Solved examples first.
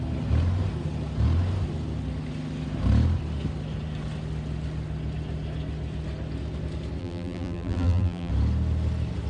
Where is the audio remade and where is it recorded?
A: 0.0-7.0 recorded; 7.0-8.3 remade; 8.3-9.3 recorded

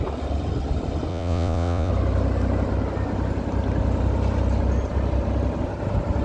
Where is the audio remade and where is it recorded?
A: 0.0-1.1 recorded; 1.1-1.9 remade; 1.9-6.2 recorded